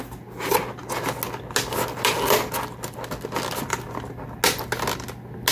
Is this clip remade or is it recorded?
recorded